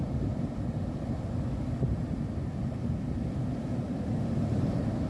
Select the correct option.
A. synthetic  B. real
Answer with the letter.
B